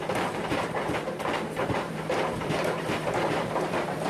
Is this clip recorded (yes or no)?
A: no